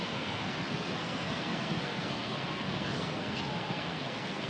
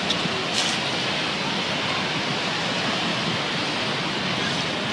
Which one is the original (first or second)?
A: second